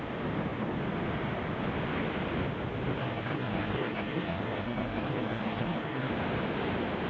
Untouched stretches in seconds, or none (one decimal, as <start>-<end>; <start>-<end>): 0.0-3.0; 6.1-7.1